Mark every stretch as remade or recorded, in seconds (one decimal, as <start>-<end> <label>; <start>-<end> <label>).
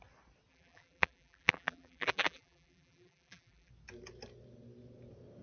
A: 0.0-0.5 recorded; 0.5-3.7 remade; 3.7-5.4 recorded